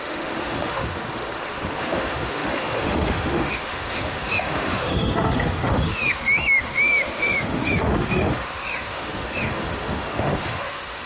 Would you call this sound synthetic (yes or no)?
yes